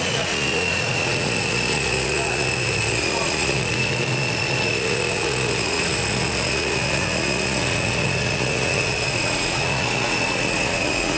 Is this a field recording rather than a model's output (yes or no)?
no